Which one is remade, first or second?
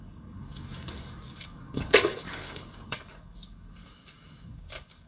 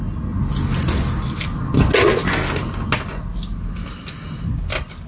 first